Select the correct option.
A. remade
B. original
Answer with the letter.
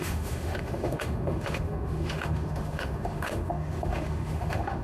A